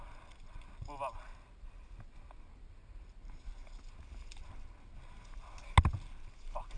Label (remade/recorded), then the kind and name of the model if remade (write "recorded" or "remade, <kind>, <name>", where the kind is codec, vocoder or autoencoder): recorded